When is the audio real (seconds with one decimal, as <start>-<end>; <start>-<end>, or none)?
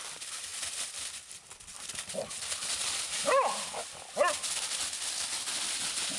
0.0-6.2